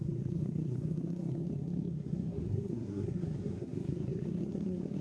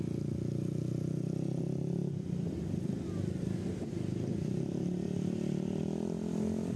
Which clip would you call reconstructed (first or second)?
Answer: first